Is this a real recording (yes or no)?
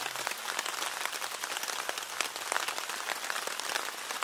yes